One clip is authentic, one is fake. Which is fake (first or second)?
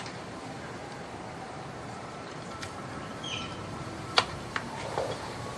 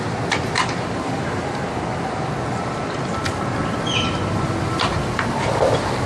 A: first